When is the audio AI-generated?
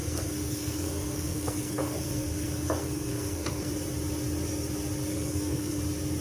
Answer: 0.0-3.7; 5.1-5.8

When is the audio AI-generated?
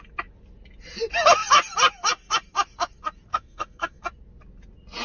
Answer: 3.3-4.0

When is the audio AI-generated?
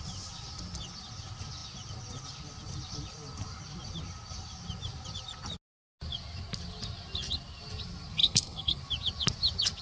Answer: 8.2-8.8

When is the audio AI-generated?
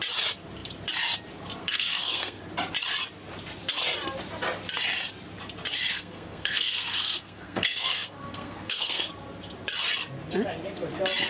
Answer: 1.6-2.4; 5.9-9.1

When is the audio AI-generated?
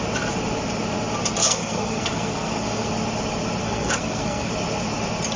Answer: 1.4-2.9; 3.6-4.5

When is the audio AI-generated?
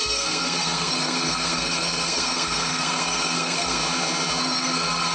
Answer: 0.0-3.8; 4.4-5.1